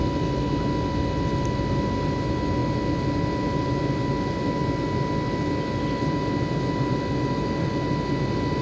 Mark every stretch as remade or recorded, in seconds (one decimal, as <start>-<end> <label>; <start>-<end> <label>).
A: 0.0-8.6 recorded